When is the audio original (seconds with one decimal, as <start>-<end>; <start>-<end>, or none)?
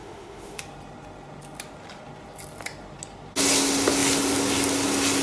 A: 0.6-5.2